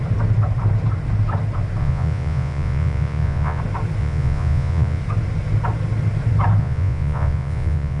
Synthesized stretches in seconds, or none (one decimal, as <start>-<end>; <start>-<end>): 1.8-3.6; 4.0-5.0; 6.6-8.0